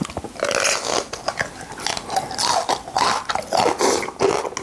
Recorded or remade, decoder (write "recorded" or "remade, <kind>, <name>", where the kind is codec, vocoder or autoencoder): recorded